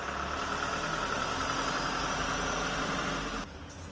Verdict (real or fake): real